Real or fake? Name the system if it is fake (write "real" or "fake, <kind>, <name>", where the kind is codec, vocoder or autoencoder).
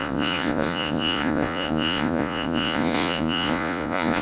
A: fake, vocoder, Vocos